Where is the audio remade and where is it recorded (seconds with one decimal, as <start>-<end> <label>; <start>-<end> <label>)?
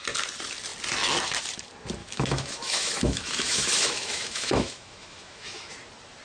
0.0-2.0 recorded; 2.0-5.7 remade; 5.7-6.2 recorded